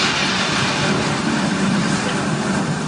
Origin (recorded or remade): recorded